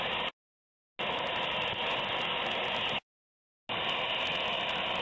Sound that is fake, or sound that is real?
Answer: real